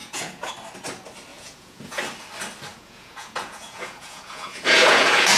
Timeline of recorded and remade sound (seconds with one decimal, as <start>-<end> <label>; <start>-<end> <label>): 0.0-0.5 remade; 0.5-1.3 recorded; 1.3-2.0 remade; 2.0-2.7 recorded; 2.7-5.4 remade